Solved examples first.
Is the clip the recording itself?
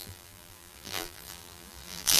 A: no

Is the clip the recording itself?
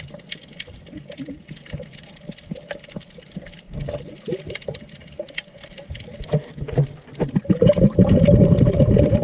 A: yes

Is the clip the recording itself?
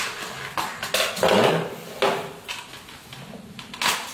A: yes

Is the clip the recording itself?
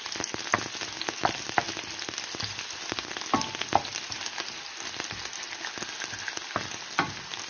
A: yes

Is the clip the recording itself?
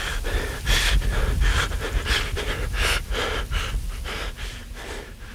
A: yes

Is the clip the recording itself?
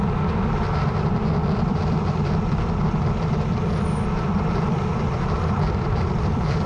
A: no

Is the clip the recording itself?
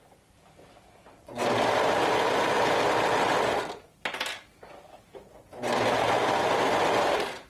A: yes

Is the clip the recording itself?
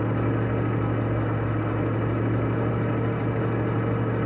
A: yes